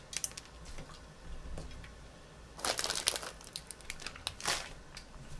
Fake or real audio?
real